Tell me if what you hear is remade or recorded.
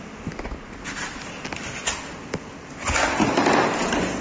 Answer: recorded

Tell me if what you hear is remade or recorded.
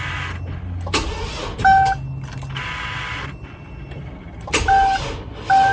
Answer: recorded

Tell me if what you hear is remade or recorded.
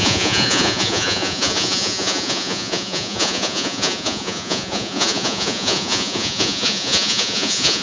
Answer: remade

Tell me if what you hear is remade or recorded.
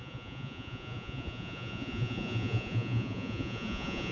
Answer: remade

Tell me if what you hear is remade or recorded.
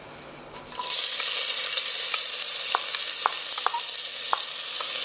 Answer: recorded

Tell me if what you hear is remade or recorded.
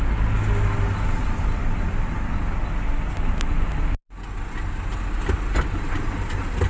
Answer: recorded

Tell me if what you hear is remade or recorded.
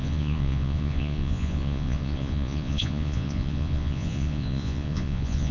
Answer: remade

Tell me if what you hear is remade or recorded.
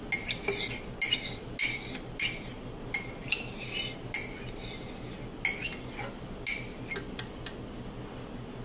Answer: recorded